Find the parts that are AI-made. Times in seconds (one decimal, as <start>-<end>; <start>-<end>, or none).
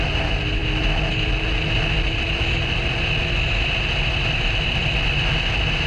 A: none